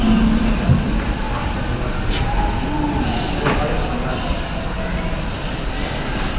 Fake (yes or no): no